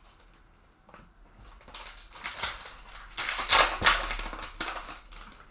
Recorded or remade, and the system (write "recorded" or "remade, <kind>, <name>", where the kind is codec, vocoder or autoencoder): recorded